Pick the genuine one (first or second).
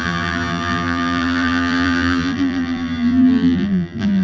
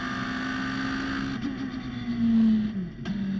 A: second